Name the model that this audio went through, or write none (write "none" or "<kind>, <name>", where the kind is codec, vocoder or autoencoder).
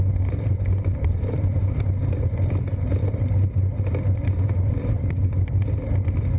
vocoder, BigVGAN v2